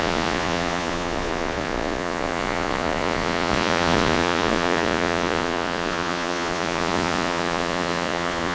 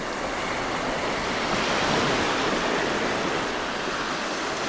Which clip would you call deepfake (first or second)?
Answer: first